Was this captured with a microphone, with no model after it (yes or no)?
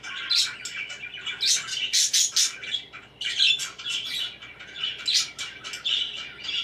yes